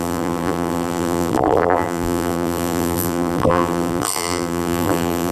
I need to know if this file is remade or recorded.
remade